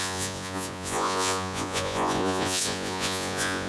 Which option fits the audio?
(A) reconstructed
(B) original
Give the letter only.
A